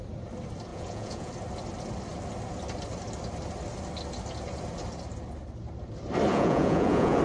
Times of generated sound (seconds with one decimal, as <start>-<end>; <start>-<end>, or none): 0.7-1.3; 6.3-7.2